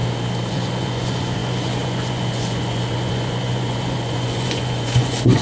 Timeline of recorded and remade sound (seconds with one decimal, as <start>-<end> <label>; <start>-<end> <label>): 0.0-0.5 recorded; 0.5-5.4 remade